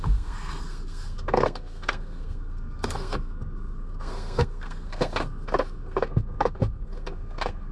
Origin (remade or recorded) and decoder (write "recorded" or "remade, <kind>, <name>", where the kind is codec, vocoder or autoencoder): remade, codec, SNAC